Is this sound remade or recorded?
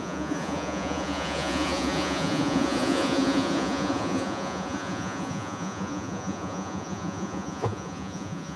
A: remade